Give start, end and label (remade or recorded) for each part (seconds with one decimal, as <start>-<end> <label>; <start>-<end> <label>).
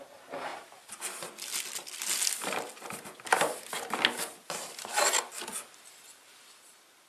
0.0-0.5 recorded; 0.5-1.3 remade; 1.3-7.1 recorded